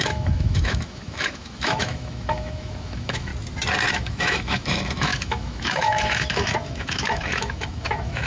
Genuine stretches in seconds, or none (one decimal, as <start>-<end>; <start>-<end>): 3.3-3.9